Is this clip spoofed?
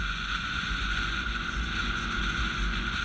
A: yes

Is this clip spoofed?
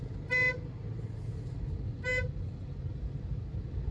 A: no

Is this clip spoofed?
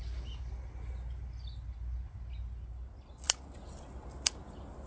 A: no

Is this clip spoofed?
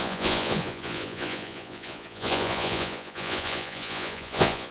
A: yes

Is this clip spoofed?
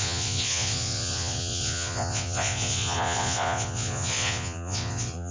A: yes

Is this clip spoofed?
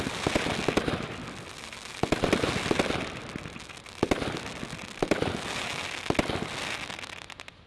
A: no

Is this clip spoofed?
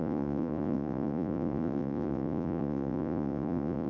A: yes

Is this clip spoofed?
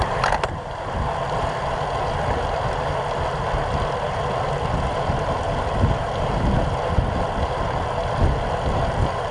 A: no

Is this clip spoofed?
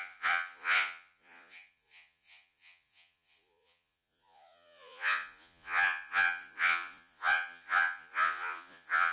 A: yes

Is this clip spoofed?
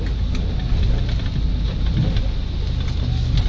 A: no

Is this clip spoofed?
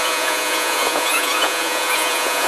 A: yes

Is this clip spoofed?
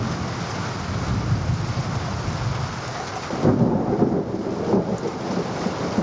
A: no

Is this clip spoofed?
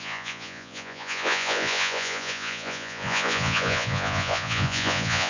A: yes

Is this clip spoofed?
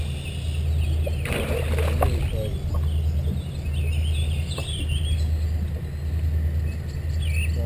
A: no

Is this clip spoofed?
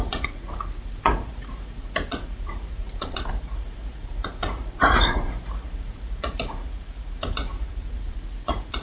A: yes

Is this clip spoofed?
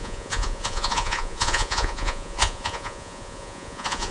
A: yes